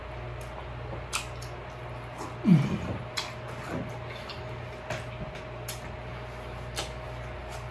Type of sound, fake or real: real